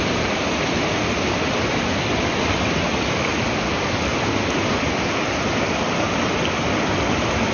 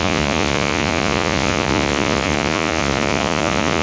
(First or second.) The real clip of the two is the first